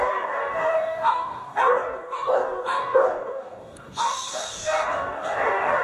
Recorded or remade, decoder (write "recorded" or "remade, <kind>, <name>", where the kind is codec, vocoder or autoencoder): remade, codec, DAC